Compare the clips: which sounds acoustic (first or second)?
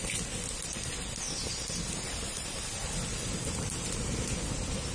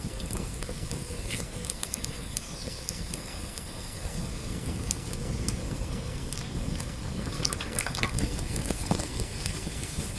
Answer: first